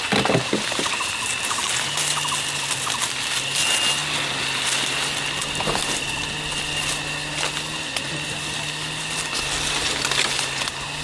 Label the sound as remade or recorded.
recorded